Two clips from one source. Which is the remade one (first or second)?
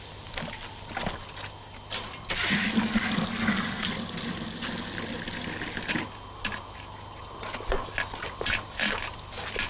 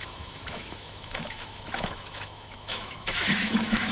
second